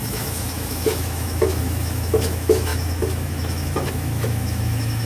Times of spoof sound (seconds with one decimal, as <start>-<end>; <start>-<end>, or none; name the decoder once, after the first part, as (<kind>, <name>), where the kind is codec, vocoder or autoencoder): 0.0-5.1 (autoencoder, DAC-VAE)

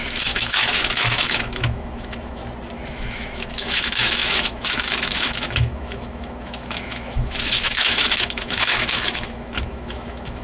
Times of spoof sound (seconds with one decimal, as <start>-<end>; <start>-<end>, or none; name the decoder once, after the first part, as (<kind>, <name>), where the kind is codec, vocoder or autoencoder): 0.0-2.4 (autoencoder, DAC-VAE); 2.9-10.4

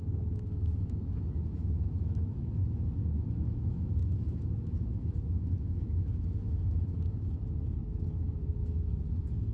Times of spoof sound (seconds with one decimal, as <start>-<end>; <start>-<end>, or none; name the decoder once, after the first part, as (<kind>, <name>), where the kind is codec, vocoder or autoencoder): 0.0-9.5 (autoencoder, DAC-VAE)

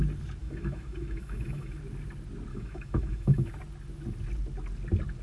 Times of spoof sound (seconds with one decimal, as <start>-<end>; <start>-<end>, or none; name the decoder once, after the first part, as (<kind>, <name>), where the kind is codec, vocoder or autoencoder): 0.4-1.8 (autoencoder, DAC-VAE); 2.5-3.5